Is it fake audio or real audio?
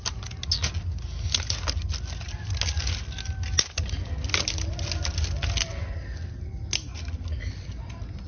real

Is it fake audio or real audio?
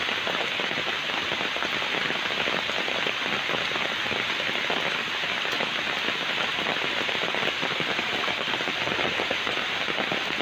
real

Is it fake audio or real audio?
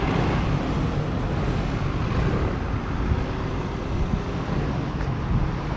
real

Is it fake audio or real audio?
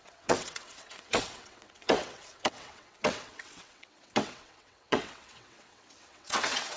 fake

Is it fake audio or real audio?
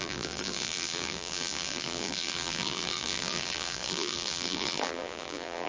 fake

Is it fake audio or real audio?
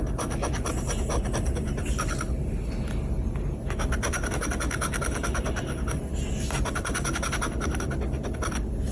real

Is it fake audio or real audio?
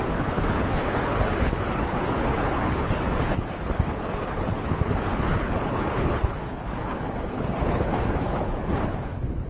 fake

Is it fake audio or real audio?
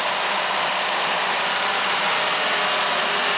real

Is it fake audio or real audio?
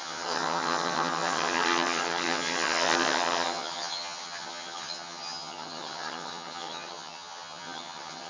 fake